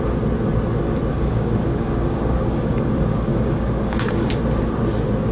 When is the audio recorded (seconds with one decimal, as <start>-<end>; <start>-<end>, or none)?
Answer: 0.0-1.1; 4.3-5.3